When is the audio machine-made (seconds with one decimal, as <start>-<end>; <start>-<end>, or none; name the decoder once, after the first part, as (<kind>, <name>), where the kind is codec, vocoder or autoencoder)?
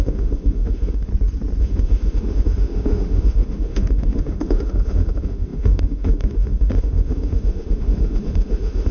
0.0-1.1 (autoencoder, DAC-VAE); 1.6-8.9